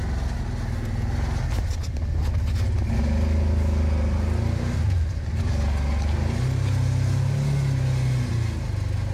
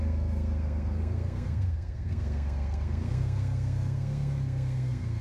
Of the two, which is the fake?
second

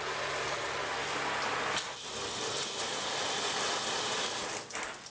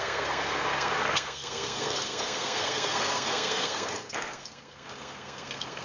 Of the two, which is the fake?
second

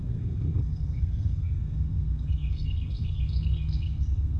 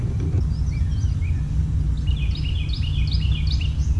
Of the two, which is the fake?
first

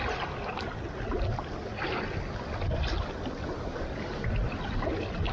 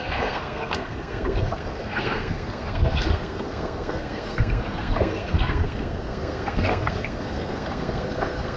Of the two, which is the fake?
second